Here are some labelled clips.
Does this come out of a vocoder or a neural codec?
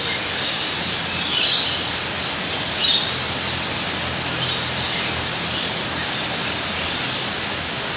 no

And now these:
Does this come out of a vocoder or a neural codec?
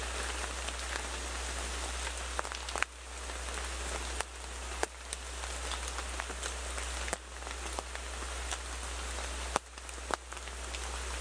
no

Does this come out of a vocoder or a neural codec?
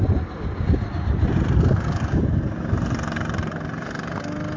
no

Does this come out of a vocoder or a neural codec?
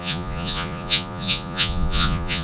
yes